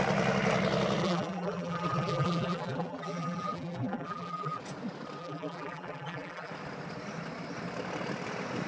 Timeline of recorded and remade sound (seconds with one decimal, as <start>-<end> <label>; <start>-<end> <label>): 0.0-1.0 recorded; 1.0-4.6 remade; 4.6-5.2 recorded; 5.2-6.5 remade; 6.5-8.7 recorded